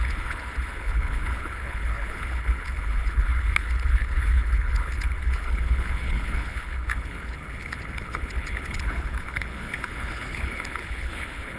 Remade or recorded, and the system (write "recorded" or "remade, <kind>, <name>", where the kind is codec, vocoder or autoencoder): remade, codec, HILCodec